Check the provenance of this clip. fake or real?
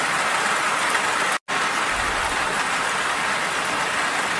real